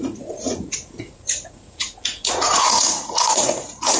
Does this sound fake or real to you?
fake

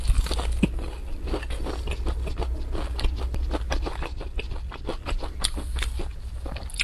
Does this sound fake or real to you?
real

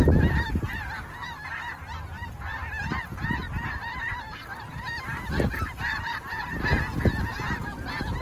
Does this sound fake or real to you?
real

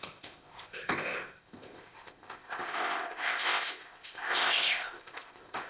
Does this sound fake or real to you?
fake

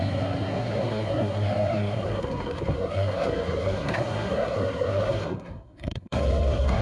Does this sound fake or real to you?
fake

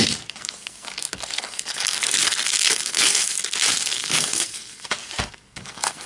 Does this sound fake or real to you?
fake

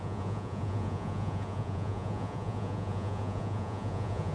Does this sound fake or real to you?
fake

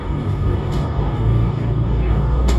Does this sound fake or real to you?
fake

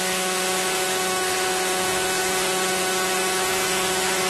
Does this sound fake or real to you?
fake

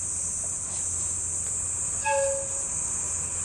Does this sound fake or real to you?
real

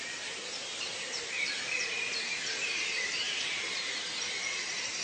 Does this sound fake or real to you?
fake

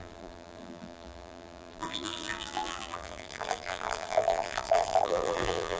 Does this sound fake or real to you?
fake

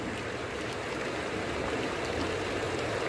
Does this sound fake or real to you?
real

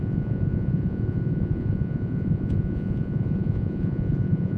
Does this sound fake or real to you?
fake